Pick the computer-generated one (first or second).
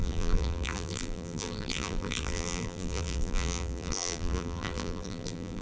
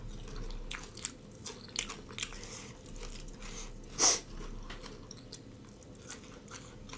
first